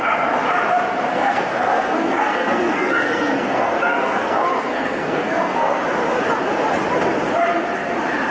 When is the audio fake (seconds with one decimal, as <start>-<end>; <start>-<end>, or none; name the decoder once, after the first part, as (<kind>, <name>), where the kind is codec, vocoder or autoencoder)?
1.1-5.8 (codec, SNAC)